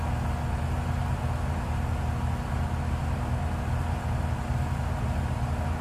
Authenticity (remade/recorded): recorded